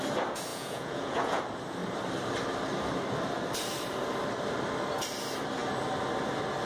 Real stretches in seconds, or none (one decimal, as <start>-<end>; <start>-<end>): 0.0-0.5; 1.4-6.7